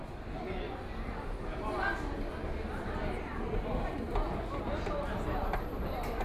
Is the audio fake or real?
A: real